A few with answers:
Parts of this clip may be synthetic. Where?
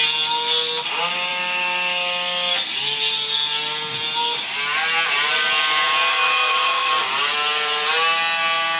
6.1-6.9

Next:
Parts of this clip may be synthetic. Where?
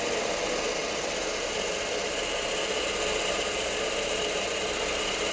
none